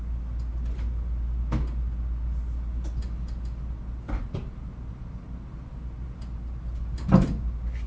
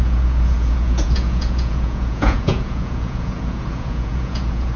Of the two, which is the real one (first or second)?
first